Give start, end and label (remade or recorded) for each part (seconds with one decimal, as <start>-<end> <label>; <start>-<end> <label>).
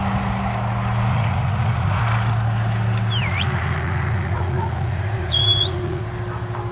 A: 0.0-1.1 recorded; 1.1-2.0 remade; 2.0-3.2 recorded; 3.2-6.0 remade; 6.0-6.7 recorded